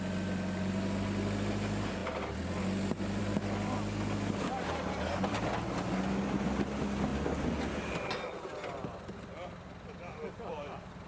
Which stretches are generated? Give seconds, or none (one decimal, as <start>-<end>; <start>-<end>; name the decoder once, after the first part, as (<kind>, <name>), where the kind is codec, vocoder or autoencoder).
none